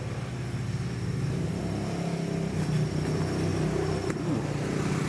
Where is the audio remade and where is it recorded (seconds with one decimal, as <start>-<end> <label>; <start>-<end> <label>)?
0.0-3.5 recorded; 3.5-4.4 remade; 4.4-5.1 recorded